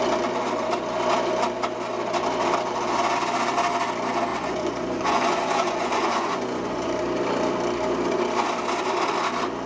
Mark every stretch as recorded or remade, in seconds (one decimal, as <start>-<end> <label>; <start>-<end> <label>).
0.0-4.3 recorded; 4.3-7.0 remade; 7.0-9.7 recorded